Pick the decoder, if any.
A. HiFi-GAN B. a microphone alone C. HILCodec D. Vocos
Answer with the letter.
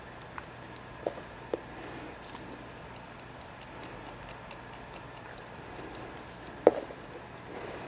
B